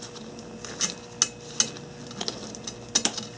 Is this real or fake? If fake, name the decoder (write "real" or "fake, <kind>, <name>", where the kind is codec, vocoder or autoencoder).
real